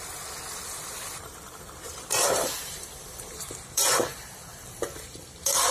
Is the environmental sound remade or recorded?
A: remade